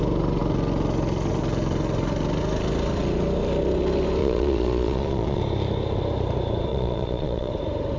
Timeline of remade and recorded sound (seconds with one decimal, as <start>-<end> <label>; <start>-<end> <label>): 0.0-4.2 recorded; 4.2-5.4 remade; 5.4-6.7 recorded; 6.7-7.5 remade; 7.5-8.0 recorded